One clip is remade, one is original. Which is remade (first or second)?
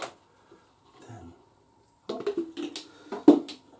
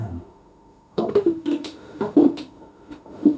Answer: second